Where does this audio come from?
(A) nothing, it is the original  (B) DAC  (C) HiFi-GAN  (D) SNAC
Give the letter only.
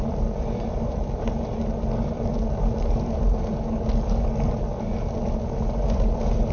A